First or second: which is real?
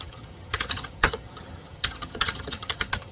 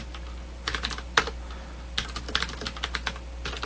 second